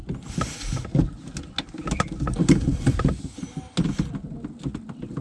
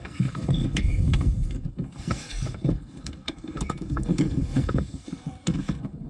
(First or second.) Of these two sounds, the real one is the first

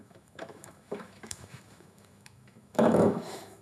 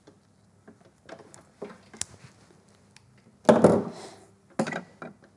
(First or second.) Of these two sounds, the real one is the second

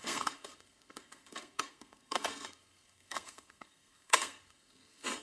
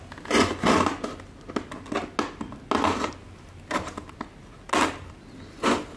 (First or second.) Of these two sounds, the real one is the second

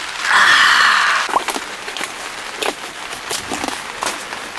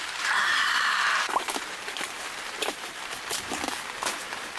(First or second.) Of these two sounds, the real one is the first